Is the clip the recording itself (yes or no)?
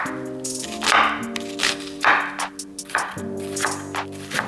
yes